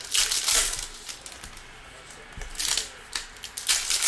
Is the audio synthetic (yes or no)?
no